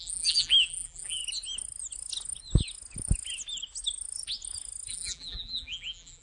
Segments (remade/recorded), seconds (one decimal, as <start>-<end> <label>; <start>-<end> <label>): 0.0-1.2 remade; 1.2-4.9 recorded; 4.9-6.2 remade